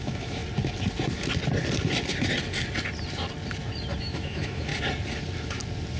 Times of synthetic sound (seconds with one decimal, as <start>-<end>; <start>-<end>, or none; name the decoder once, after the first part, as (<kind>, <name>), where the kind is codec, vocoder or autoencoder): 0.0-0.4 (autoencoder, DAC-VAE); 4.0-4.7